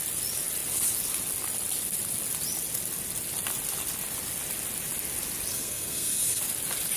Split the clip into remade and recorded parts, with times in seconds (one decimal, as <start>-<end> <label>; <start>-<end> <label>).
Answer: 0.0-5.5 recorded; 5.5-6.4 remade; 6.4-7.0 recorded